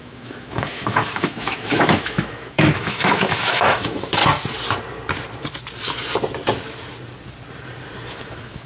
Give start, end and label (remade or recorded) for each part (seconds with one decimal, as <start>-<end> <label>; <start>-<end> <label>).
0.0-4.2 remade; 4.2-8.1 recorded; 8.1-8.7 remade